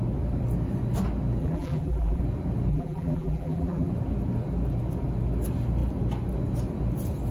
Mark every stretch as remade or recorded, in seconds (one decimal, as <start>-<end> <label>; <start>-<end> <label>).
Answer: 0.0-1.4 recorded; 1.4-2.2 remade; 2.2-2.7 recorded; 2.7-3.9 remade; 3.9-7.3 recorded